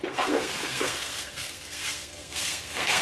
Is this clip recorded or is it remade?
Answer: remade